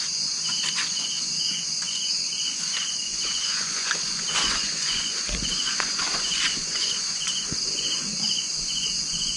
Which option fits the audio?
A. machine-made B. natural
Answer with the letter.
A